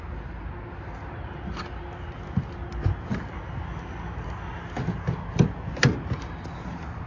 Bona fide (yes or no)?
yes